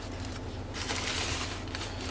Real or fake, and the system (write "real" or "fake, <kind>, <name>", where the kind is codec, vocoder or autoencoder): real